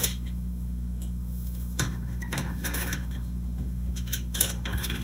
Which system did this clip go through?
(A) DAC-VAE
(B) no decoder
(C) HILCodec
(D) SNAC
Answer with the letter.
A